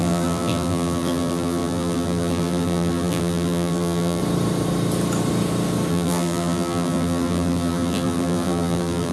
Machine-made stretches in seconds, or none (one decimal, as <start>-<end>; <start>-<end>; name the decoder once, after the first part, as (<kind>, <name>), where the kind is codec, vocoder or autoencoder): 0.0-4.2 (vocoder, BigVGAN v2); 5.9-9.1